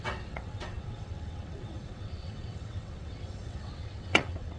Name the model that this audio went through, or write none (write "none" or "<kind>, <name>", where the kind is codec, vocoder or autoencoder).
vocoder, WaveNeXt